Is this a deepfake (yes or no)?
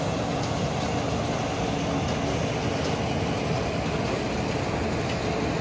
no